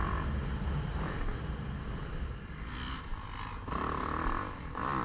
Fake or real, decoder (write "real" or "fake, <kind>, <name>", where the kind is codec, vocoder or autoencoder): real